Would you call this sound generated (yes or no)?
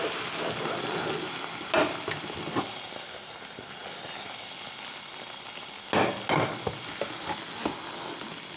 no